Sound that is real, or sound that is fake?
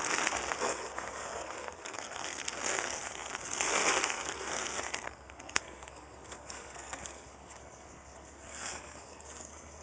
fake